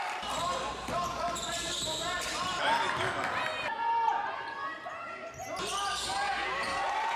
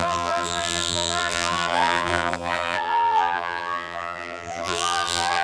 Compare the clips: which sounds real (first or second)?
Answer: first